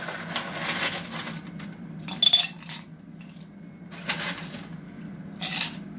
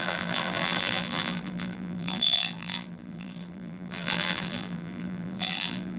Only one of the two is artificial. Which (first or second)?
second